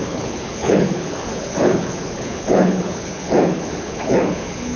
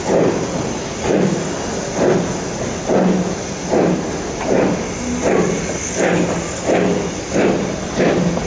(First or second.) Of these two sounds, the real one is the second